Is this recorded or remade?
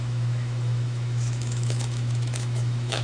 remade